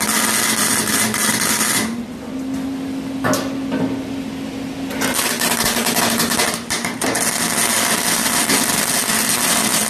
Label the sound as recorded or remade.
recorded